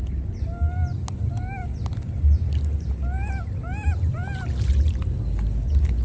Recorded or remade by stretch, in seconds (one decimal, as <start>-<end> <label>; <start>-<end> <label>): 0.0-6.0 recorded